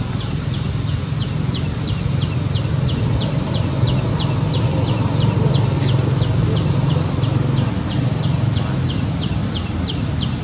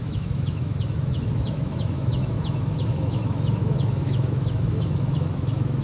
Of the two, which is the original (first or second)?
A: first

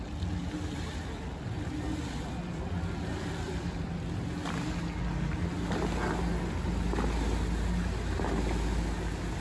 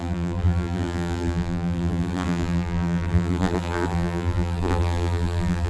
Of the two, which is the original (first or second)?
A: first